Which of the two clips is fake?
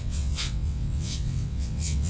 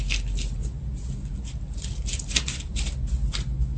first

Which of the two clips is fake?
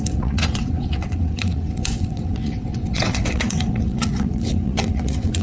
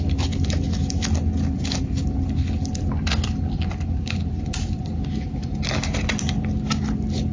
first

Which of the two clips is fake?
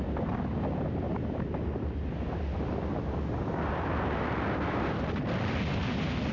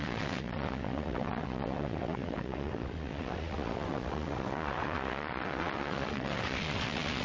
second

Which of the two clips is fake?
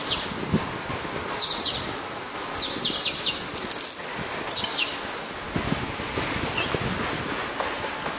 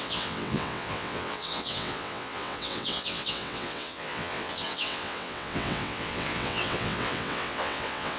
second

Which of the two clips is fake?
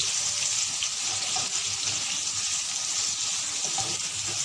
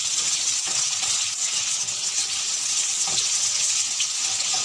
second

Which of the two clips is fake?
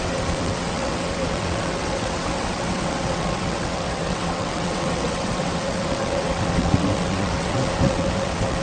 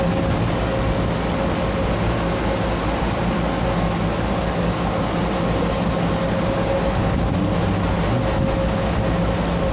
first